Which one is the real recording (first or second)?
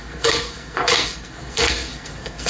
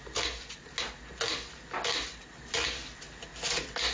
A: second